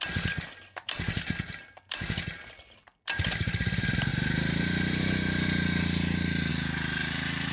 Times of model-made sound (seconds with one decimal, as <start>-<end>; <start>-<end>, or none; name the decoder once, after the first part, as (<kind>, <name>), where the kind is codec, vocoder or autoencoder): none